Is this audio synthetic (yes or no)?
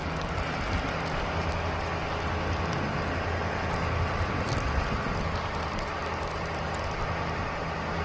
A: no